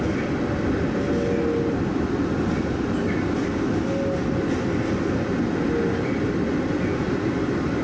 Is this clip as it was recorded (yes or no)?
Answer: yes